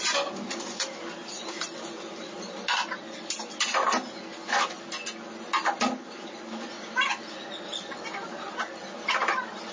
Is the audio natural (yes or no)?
yes